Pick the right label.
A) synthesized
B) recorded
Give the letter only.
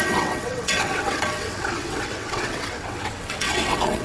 A